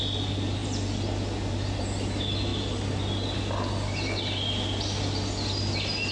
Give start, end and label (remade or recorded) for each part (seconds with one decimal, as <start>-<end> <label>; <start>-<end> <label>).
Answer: 0.0-6.1 recorded